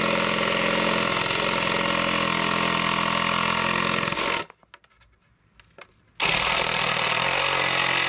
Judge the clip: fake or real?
real